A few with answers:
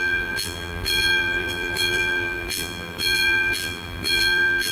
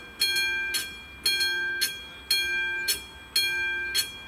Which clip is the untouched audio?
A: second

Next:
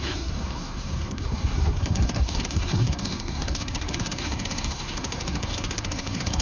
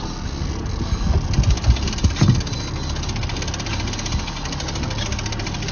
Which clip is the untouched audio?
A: second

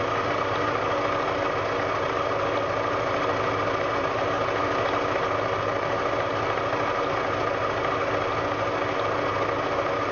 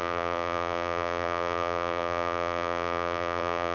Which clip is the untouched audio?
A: first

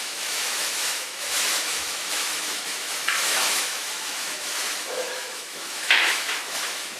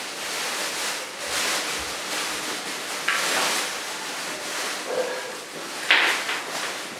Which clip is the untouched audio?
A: second